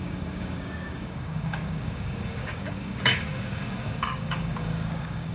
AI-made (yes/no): yes